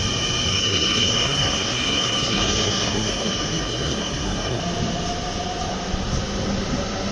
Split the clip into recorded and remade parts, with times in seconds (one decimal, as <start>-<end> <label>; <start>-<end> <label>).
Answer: 0.0-0.5 recorded; 0.5-4.6 remade; 4.6-7.1 recorded

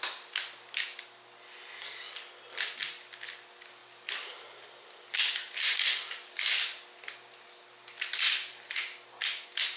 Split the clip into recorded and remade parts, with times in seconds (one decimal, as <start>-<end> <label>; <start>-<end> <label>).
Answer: 0.0-3.8 recorded; 3.8-6.6 remade; 6.6-8.1 recorded; 8.1-8.7 remade; 8.7-9.8 recorded

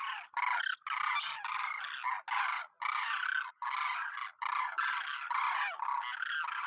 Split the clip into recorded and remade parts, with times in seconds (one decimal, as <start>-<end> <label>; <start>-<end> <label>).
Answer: 0.0-6.7 recorded

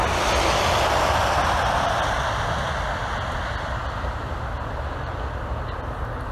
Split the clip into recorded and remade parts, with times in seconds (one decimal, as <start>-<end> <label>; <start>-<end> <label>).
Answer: 0.0-6.3 recorded

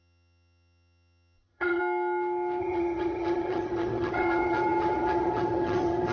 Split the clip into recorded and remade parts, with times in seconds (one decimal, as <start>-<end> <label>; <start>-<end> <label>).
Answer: 0.0-1.8 remade; 1.8-2.6 recorded; 2.6-6.1 remade